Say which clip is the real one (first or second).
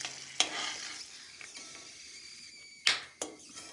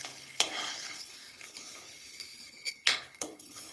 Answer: first